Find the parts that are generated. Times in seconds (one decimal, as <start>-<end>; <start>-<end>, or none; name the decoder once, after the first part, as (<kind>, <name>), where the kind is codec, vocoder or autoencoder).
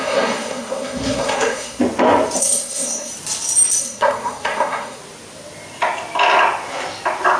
0.0-1.8 (codec, SNAC); 2.4-3.1; 3.8-5.0